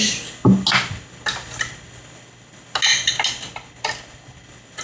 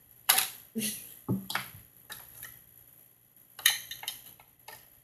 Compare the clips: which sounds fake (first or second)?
second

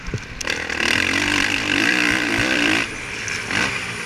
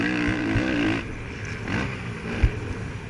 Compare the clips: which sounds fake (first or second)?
first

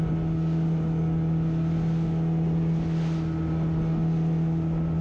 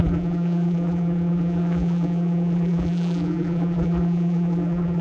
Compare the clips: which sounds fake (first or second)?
second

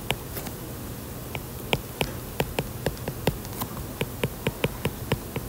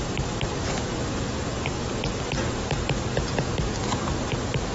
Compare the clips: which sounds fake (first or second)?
second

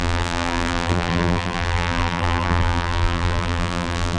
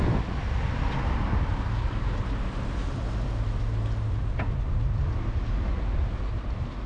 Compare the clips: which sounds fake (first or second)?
first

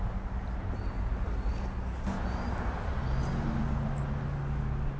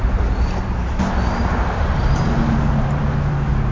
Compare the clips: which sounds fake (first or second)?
second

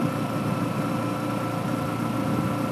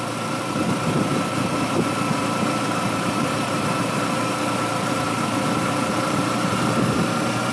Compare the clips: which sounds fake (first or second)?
second